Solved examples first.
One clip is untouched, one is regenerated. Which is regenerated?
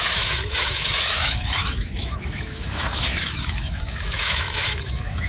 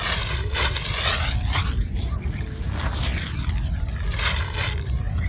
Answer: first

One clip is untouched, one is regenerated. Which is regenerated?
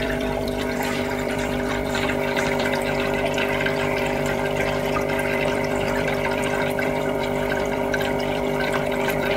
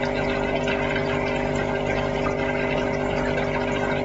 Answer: first